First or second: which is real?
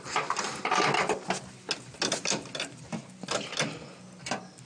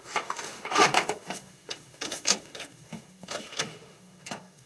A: first